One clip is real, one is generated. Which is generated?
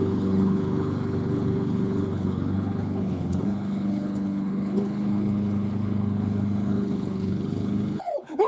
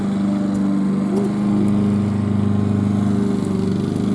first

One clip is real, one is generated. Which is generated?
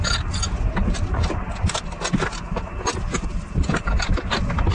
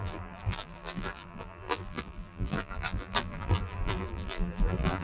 second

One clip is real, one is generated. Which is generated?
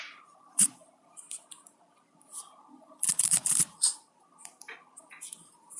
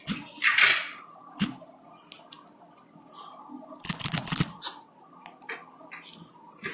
first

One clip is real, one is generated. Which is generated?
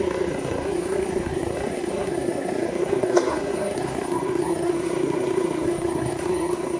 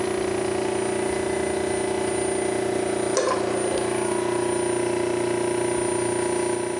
first